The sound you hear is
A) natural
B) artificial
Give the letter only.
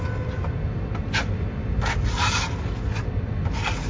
A